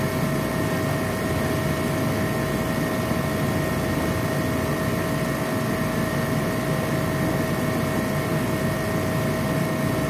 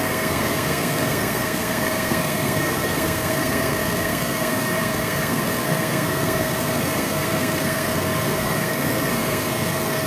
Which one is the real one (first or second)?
first